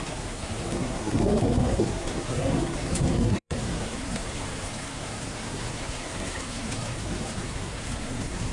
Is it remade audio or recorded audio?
remade